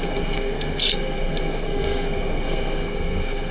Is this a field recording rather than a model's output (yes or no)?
no